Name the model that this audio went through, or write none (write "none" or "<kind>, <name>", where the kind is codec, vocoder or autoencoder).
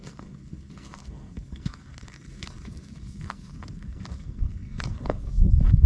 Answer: codec, SNAC